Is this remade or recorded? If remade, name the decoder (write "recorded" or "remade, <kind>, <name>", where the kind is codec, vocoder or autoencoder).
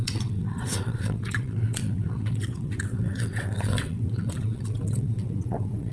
remade, vocoder, WaveNeXt